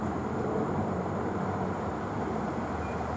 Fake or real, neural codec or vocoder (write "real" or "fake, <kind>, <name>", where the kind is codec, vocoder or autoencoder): fake, vocoder, BigVGAN v2